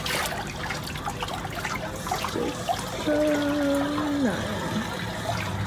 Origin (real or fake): real